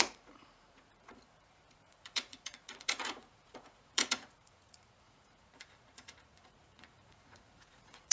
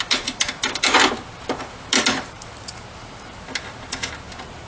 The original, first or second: second